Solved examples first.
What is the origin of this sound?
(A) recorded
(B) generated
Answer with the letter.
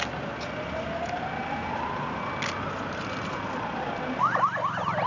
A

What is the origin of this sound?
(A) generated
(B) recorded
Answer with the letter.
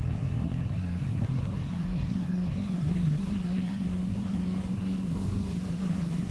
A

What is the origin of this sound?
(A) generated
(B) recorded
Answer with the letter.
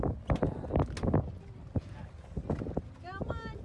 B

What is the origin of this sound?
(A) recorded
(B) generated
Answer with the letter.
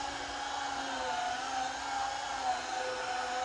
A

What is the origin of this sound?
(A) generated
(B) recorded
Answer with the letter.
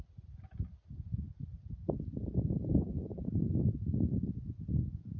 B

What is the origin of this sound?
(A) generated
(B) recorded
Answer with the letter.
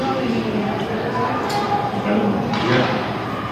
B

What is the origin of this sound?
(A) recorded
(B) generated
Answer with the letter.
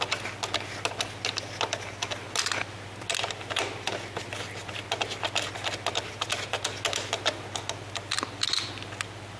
A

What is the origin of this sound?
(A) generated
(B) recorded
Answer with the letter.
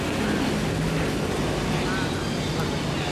B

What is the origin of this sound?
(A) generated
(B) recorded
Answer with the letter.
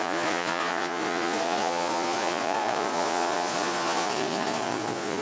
A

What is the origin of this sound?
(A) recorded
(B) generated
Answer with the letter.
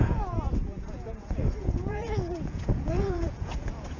B